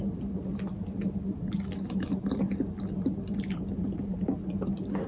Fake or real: real